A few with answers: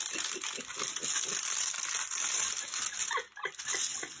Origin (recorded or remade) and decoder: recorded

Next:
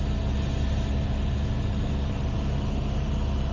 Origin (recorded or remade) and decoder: recorded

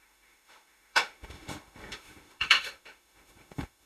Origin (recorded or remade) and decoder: remade, autoencoder, DAC-VAE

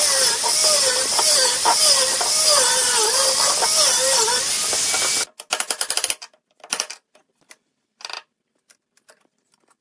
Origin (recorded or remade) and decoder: recorded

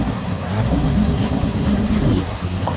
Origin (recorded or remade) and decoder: remade, codec, SNAC